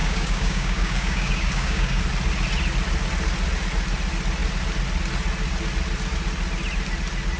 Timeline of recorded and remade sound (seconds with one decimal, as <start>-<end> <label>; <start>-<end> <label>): 0.0-2.0 remade; 2.0-7.4 recorded